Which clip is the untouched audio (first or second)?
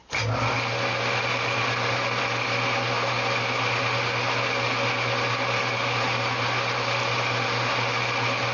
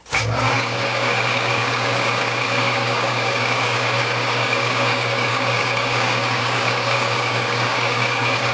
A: first